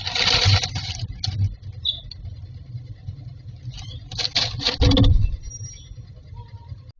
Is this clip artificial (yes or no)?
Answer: no